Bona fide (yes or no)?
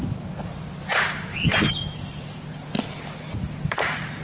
no